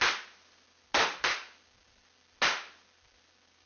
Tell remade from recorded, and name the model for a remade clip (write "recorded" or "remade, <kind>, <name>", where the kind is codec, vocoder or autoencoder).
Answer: recorded